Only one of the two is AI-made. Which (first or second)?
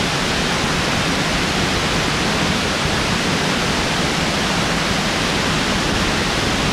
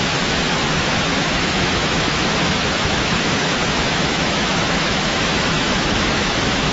second